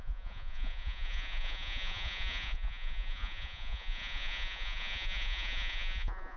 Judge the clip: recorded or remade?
remade